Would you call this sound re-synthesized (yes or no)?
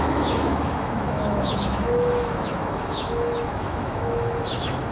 yes